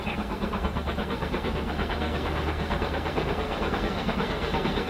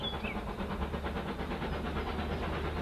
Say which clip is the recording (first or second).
second